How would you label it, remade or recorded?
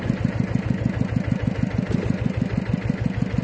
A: recorded